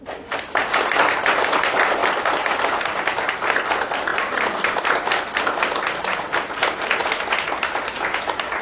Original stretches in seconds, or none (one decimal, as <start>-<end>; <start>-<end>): 0.0-8.6